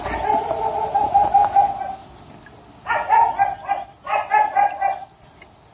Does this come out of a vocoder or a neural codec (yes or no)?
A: no